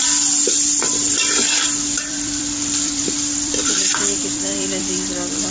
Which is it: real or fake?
fake